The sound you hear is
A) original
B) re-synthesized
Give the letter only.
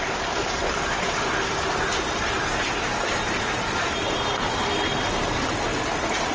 A